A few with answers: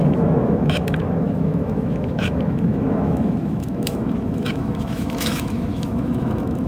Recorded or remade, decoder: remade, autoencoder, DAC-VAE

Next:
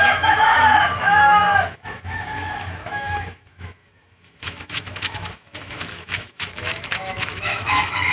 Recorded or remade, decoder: remade, autoencoder, DAC-VAE